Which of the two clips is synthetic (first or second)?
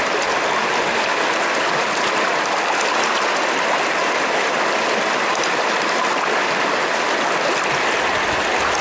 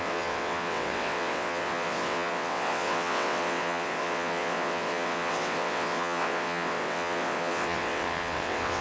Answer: second